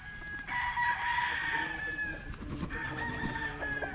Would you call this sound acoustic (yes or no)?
yes